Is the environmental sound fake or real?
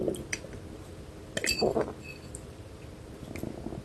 real